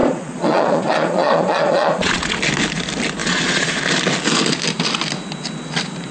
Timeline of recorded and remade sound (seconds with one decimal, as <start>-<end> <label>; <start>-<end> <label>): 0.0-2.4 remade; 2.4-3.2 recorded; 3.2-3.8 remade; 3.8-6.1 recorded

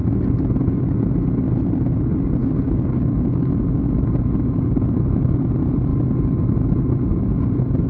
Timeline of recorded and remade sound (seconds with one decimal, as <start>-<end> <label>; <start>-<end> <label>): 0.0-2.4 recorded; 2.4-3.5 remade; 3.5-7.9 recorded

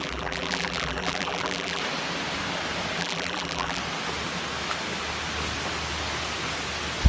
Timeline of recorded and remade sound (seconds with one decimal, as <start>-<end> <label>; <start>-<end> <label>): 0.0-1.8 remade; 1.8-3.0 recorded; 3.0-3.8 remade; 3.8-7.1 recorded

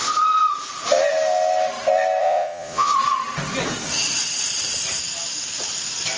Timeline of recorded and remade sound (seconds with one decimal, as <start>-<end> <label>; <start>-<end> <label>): 0.0-2.2 recorded; 2.2-2.9 remade; 2.9-6.2 recorded